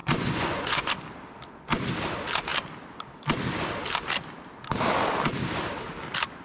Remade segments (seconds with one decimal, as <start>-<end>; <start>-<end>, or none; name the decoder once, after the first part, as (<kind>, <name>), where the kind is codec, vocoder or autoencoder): 0.0-0.9 (vocoder, Vocos)